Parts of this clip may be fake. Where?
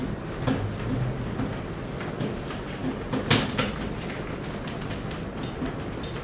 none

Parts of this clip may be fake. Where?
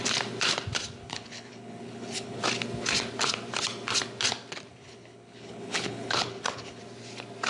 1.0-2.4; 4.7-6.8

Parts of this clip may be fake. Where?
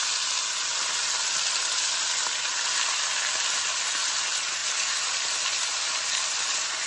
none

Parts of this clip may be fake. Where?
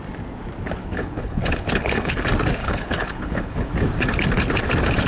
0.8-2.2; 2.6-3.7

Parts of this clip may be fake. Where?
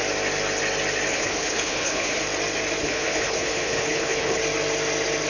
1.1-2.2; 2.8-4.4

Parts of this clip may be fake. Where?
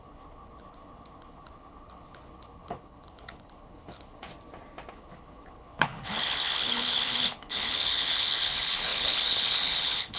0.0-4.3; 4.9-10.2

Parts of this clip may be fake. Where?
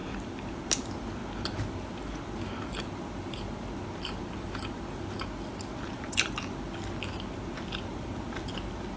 none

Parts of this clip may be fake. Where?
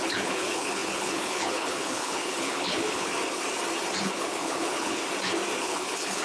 0.0-3.1; 4.0-5.0; 5.6-6.2